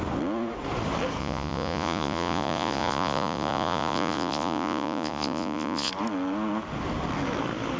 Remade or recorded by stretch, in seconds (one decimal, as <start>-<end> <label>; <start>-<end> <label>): 0.0-1.2 recorded; 1.2-5.9 remade; 5.9-7.8 recorded